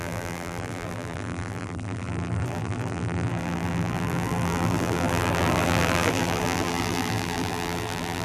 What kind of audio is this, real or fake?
fake